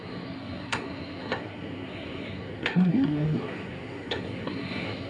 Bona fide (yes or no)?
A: no